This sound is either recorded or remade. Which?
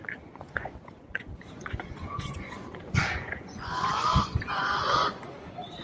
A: remade